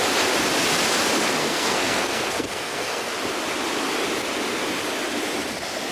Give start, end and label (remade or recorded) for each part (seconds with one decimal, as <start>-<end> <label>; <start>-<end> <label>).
0.0-1.4 recorded; 1.4-3.1 remade; 3.1-5.9 recorded